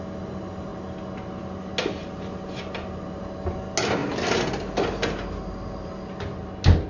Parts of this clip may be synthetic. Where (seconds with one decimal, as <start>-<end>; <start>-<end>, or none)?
none